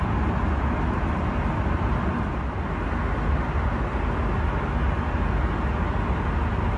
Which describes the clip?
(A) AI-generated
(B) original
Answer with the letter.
B